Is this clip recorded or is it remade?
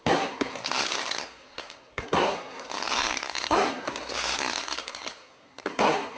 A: remade